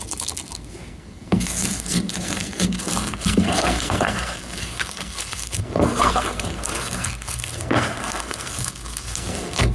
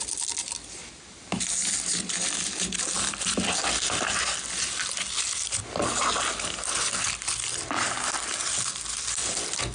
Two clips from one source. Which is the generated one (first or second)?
first